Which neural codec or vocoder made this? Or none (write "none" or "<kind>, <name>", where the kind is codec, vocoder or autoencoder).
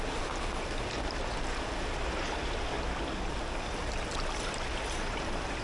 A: none